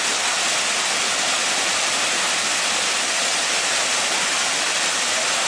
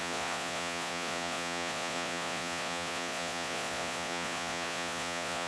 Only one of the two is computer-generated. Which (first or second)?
second